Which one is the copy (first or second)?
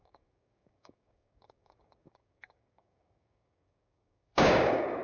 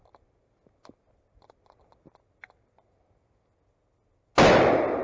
first